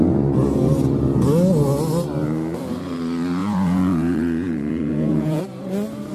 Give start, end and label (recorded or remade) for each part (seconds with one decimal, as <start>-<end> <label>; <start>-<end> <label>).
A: 0.0-3.4 recorded; 3.4-5.4 remade; 5.4-6.1 recorded